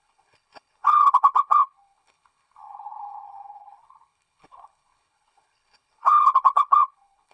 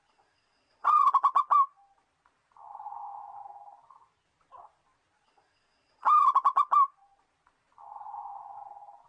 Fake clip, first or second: first